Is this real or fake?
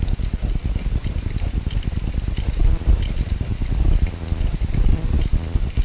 real